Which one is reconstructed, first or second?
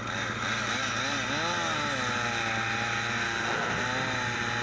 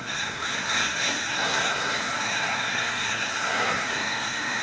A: second